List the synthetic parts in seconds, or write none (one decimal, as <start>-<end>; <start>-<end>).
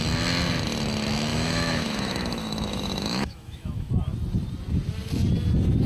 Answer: 1.3-3.9